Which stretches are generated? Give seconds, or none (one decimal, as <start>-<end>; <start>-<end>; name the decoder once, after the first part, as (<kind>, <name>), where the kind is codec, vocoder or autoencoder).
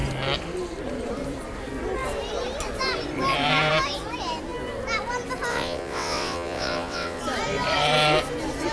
5.5-7.2 (vocoder, WaveNeXt)